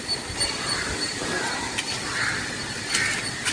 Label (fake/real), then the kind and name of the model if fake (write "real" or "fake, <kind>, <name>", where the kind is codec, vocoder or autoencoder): real